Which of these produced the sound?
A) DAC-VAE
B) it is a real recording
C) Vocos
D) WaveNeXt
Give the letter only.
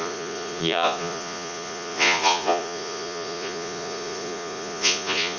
C